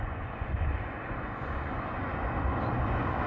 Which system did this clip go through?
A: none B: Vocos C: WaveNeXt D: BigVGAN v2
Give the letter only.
B